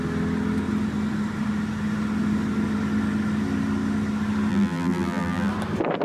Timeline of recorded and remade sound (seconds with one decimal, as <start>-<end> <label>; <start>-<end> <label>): 0.0-4.5 recorded; 4.5-5.5 remade; 5.5-6.0 recorded